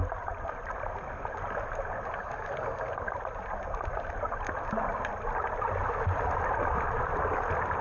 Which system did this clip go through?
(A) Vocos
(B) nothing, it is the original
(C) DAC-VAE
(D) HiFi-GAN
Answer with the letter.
B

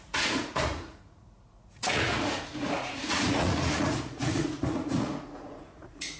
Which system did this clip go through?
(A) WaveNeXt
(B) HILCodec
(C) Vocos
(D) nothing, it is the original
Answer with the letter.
C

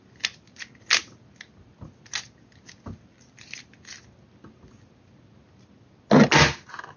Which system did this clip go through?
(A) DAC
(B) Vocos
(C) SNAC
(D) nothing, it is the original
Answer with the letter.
D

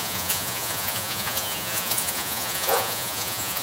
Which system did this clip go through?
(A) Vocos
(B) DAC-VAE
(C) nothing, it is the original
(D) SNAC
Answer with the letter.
A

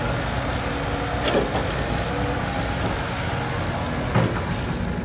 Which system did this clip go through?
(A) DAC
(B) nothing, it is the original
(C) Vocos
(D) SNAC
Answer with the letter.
B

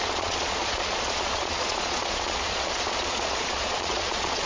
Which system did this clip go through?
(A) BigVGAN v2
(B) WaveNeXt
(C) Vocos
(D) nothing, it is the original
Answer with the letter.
C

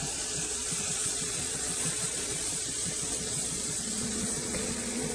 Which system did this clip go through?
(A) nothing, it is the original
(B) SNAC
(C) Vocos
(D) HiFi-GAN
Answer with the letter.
C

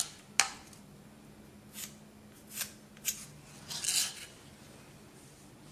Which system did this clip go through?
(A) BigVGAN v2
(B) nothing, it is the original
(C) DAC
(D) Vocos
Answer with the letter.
B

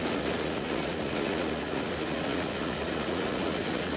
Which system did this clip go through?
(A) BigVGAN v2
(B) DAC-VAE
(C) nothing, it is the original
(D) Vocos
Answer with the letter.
D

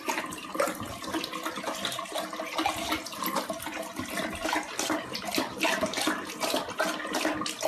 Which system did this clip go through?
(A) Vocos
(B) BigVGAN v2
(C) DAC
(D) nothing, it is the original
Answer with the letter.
D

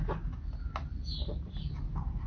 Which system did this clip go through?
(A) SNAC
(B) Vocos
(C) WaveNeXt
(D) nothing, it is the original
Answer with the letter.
D